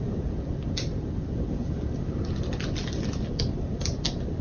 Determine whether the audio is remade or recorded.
recorded